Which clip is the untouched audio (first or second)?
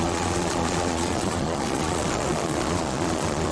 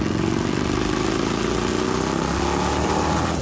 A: second